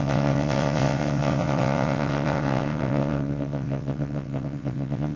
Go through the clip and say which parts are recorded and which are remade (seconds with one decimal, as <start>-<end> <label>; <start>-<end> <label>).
0.0-5.2 remade